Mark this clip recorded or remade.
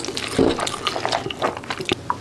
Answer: recorded